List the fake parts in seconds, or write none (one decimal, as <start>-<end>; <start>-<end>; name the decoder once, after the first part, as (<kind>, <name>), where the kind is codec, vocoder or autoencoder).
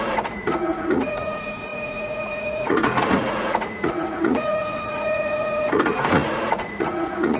0.0-7.4 (vocoder, Vocos)